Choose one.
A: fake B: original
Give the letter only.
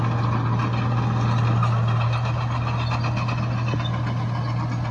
B